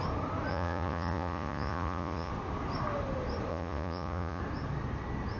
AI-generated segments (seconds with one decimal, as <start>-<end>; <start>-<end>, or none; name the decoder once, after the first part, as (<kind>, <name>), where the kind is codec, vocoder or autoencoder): 0.5-2.3 (vocoder, Vocos); 3.5-4.4